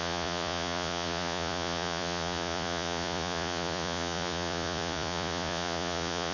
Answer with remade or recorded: remade